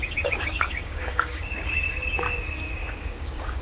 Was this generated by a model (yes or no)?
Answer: yes